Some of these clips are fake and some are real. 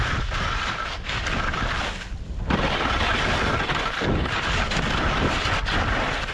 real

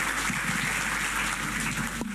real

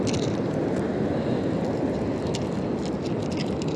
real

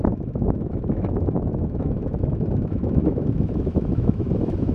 fake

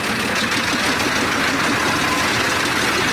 real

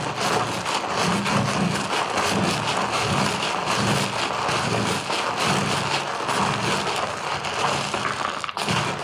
real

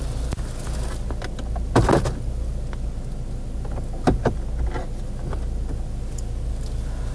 real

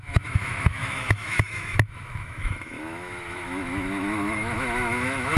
fake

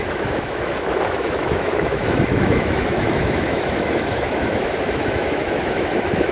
fake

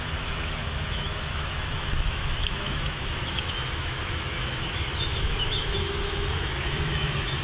fake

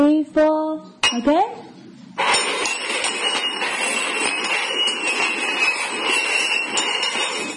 real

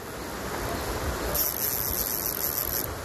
real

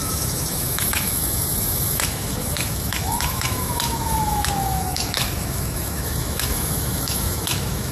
fake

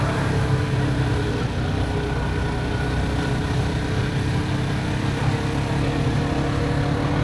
real